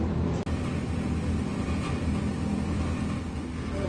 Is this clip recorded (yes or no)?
yes